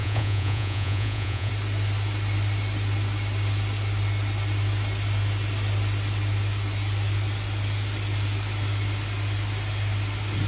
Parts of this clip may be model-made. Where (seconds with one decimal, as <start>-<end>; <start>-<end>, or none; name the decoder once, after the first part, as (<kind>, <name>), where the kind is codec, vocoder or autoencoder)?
0.0-1.5 (vocoder, Vocos)